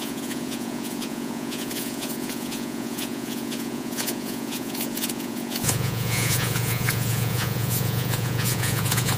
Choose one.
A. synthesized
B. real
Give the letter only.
A